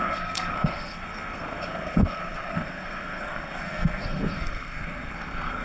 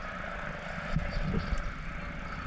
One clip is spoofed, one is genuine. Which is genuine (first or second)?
second